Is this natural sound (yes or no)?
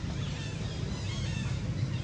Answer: yes